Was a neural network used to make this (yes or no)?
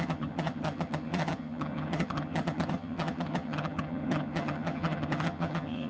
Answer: yes